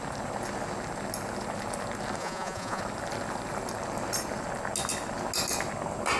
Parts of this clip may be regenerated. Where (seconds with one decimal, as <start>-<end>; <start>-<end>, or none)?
2.2-2.8